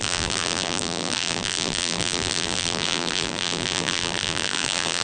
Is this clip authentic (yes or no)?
no